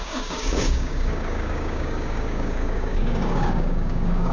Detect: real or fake fake